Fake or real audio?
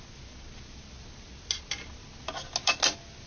real